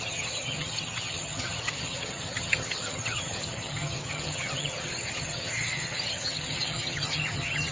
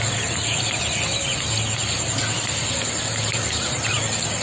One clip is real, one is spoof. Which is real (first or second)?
second